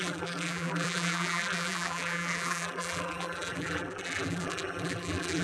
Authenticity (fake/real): fake